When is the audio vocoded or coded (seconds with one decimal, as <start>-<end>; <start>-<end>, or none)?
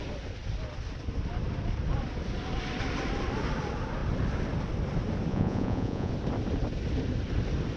5.3-6.1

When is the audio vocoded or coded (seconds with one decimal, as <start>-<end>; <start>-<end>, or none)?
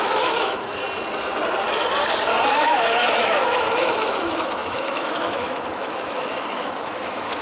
0.0-0.8; 2.5-7.4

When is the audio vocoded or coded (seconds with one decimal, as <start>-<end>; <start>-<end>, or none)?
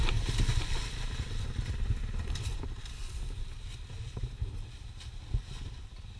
0.0-2.0; 5.7-6.2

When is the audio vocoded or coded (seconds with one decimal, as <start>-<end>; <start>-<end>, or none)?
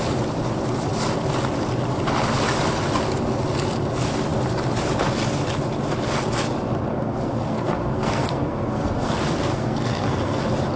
6.9-9.1; 9.5-10.4